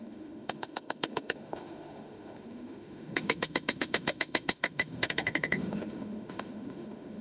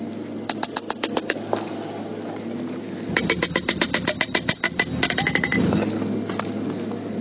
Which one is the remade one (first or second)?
first